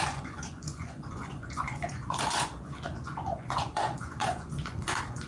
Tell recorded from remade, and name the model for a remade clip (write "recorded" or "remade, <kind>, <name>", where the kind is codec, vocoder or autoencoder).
remade, vocoder, Vocos